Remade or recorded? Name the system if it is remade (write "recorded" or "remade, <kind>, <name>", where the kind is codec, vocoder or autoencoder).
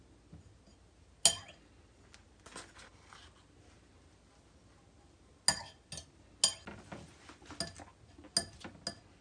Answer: recorded